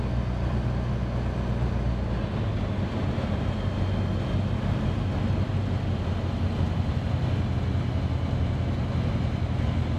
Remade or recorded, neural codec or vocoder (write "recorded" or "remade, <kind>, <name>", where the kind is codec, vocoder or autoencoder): recorded